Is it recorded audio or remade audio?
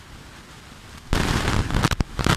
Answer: remade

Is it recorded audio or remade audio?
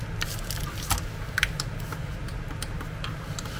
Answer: recorded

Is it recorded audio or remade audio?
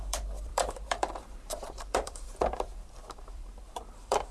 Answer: remade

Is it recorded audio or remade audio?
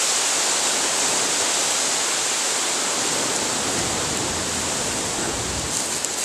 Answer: recorded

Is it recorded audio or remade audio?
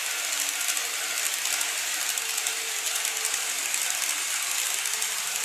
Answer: recorded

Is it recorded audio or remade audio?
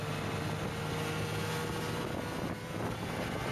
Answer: recorded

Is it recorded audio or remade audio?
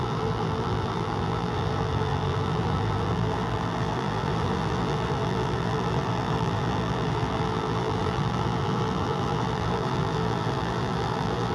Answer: remade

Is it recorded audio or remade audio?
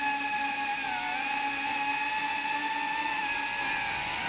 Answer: recorded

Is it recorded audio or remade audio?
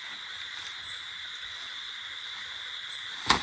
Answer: recorded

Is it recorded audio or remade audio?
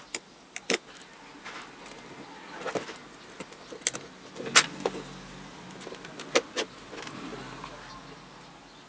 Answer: recorded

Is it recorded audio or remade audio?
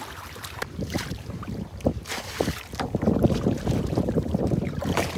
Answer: remade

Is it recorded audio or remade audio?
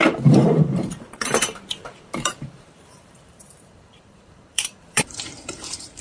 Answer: remade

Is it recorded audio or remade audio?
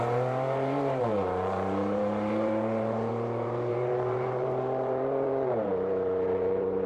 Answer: remade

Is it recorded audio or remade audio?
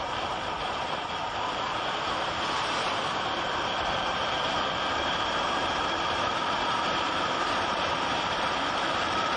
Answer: remade